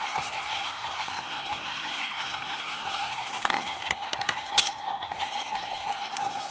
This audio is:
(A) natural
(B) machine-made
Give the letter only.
B